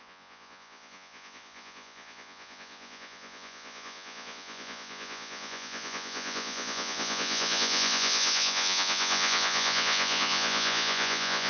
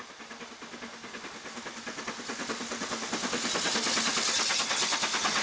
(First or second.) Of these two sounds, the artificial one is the first